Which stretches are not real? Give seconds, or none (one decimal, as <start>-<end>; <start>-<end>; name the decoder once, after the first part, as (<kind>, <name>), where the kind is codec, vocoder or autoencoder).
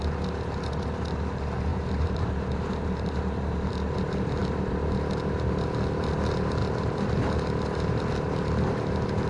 1.7-3.7 (vocoder, BigVGAN v2); 6.6-8.0